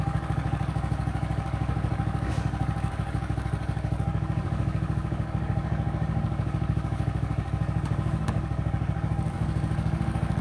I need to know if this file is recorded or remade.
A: remade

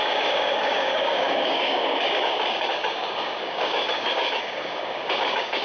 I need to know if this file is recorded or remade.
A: remade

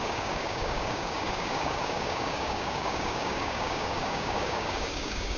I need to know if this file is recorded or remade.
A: remade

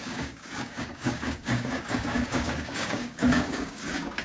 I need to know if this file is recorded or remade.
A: remade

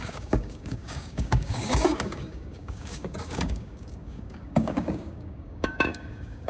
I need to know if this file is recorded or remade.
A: remade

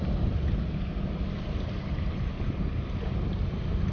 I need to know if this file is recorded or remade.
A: recorded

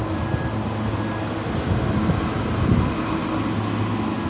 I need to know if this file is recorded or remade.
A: recorded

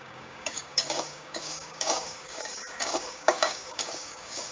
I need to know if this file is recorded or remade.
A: remade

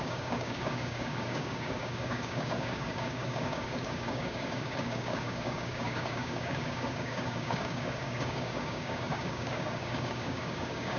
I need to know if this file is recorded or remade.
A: remade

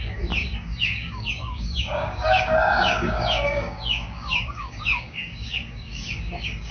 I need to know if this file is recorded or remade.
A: remade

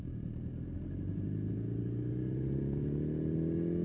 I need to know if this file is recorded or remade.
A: recorded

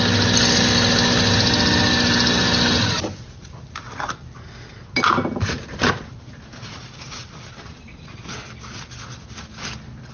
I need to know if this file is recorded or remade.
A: recorded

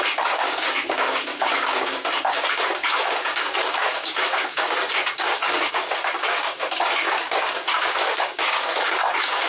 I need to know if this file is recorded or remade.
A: remade